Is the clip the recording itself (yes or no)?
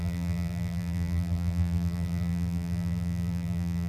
no